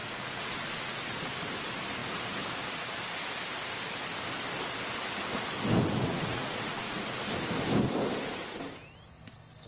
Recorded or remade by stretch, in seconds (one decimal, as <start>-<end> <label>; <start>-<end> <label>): 0.0-1.0 remade; 1.0-6.1 recorded; 6.1-7.2 remade; 7.2-9.7 recorded